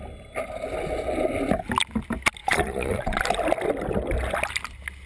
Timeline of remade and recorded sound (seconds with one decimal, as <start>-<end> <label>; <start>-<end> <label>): 0.0-2.4 recorded; 2.4-3.2 remade; 3.2-5.1 recorded